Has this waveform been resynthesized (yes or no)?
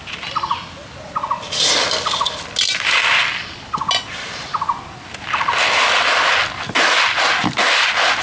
no